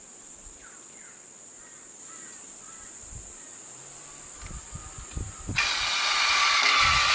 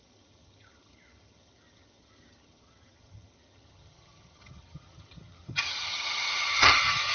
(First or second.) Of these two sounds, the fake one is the second